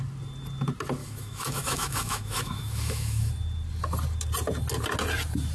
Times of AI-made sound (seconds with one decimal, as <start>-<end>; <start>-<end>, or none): 1.0-3.3